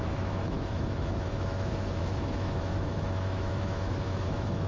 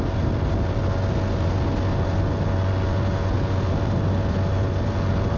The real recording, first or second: second